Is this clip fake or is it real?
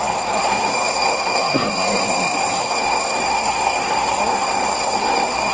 fake